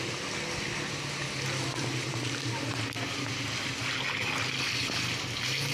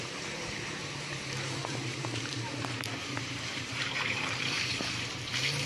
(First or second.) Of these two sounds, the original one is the first